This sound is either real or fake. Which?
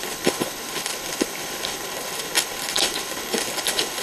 fake